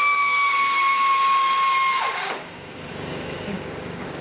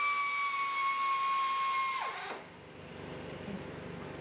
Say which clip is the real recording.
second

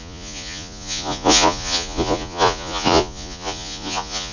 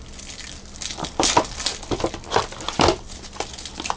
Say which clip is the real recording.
second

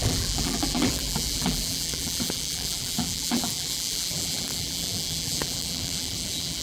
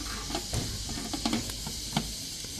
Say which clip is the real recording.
second